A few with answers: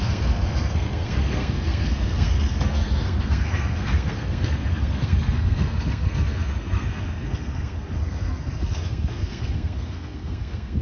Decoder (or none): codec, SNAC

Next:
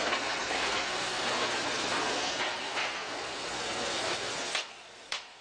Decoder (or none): codec, SNAC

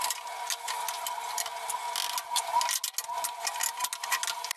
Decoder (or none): none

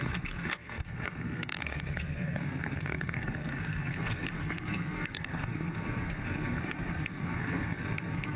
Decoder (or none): codec, SNAC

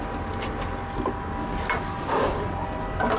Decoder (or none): none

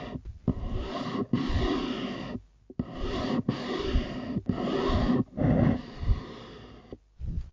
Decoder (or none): none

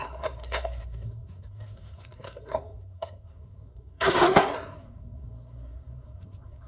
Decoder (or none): codec, SNAC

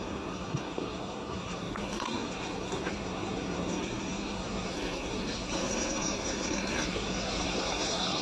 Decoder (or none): codec, SNAC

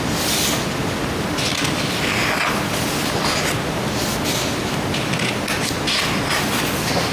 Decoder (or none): none